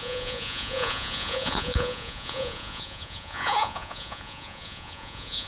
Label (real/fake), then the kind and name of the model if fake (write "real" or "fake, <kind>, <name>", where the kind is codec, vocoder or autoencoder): fake, vocoder, Vocos